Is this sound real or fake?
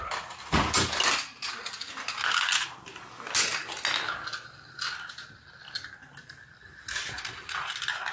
real